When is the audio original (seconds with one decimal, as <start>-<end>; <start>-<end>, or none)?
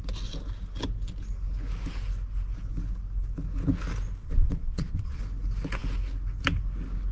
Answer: 0.0-4.2; 5.2-7.1